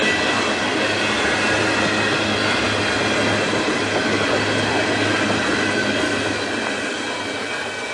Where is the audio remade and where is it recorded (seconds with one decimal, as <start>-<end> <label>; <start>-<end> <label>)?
0.0-7.9 recorded